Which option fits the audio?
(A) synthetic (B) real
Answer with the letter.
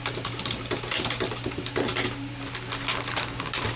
B